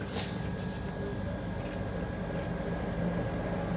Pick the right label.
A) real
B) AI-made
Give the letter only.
A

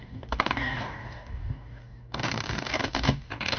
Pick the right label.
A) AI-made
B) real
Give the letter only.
A